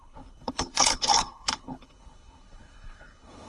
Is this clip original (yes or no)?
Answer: no